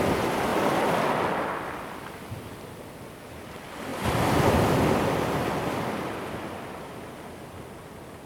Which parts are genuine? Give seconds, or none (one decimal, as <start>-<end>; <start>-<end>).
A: 0.0-8.3